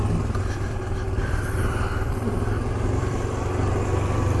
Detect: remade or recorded remade